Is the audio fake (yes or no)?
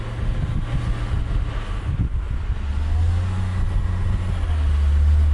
no